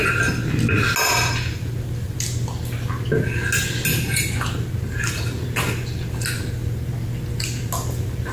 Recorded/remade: recorded